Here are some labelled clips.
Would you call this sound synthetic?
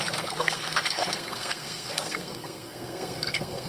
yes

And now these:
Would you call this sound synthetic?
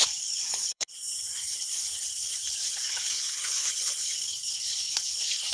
yes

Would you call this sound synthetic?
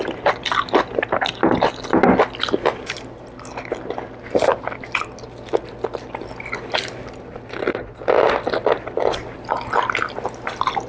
no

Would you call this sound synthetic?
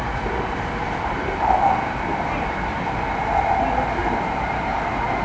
yes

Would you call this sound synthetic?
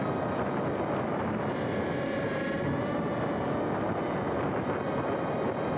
no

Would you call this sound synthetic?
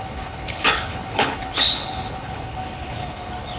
yes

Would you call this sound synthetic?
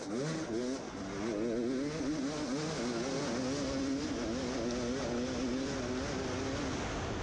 no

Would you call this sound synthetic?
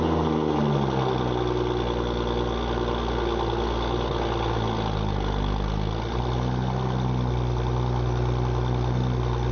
no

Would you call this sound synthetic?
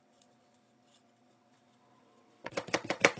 yes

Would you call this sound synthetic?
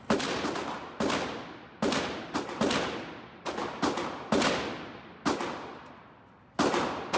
no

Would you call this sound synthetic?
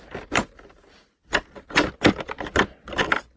no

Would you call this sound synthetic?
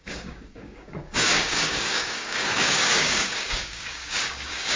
yes